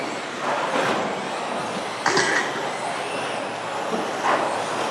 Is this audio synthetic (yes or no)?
no